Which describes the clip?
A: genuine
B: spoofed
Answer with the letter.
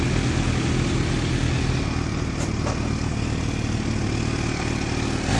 A